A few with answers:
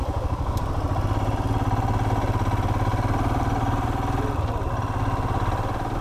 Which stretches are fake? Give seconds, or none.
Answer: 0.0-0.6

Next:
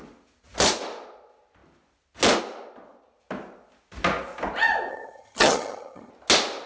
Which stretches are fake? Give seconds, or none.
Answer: 4.9-6.1

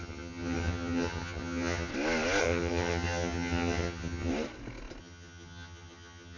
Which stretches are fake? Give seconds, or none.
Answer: 0.0-1.9; 2.4-4.3; 5.0-6.4

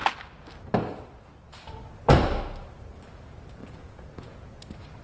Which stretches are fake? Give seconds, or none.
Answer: 3.6-4.6

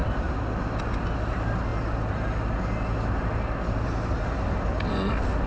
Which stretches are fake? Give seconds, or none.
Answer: none

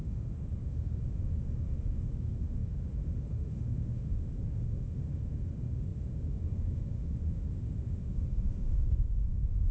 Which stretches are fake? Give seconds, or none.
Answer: 0.0-9.7